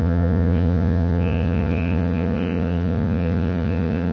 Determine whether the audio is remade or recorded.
remade